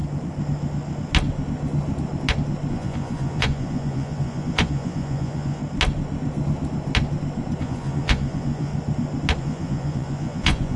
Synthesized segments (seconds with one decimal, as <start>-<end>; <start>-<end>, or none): 2.7-5.6; 7.6-8.7; 9.4-10.8